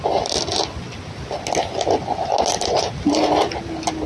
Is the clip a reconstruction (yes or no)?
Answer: no